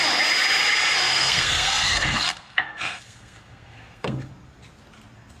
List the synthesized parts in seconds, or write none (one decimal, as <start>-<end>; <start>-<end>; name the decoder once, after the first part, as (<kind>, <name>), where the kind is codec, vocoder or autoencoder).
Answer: 1.1-4.3 (codec, SNAC)